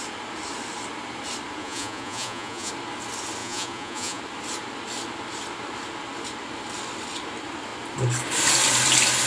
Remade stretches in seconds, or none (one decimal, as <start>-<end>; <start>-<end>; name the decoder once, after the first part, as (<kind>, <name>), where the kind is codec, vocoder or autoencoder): 1.6-2.7 (vocoder, Vocos); 3.4-4.2